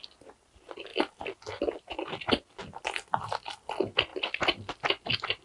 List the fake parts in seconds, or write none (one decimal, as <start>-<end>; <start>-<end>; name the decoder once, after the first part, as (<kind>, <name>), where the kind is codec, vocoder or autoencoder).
none